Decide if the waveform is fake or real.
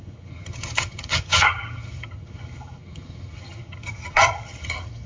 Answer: fake